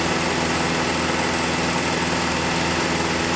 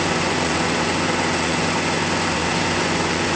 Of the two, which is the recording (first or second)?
first